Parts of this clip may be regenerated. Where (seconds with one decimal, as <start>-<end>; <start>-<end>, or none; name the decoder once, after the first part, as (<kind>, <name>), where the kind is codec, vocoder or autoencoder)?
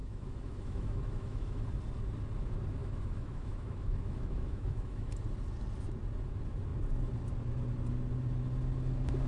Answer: 0.0-1.7 (autoencoder, DAC-VAE); 2.8-5.1